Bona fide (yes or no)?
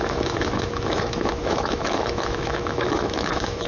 no